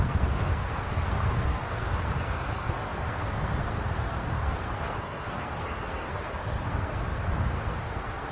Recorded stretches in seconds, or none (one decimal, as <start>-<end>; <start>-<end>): none